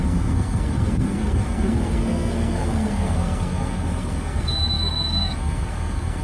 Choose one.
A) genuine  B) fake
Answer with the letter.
B